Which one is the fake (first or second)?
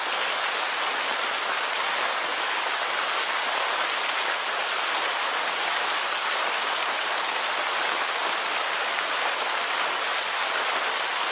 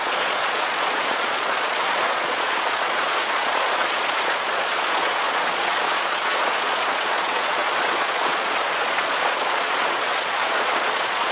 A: second